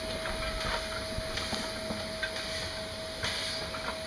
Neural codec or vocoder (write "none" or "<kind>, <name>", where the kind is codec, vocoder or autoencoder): none